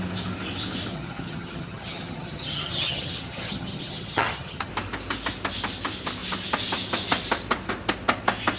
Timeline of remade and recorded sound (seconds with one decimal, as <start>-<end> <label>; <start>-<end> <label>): 0.0-0.9 recorded; 0.9-4.7 remade; 4.7-8.6 recorded